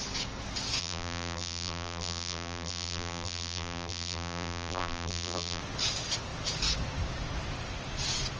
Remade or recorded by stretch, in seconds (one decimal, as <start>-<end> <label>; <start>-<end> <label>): 0.0-0.8 recorded; 0.8-5.6 remade; 5.6-8.4 recorded